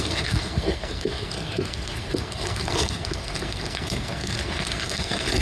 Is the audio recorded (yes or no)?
no